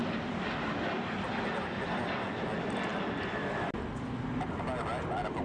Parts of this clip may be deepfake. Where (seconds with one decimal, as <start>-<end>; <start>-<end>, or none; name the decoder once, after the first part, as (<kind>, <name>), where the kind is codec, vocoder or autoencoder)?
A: none